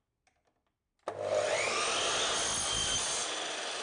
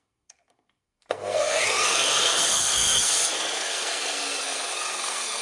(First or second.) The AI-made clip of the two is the second